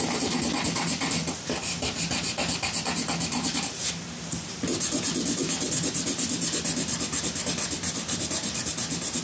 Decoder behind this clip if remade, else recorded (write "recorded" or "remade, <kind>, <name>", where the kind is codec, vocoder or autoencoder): recorded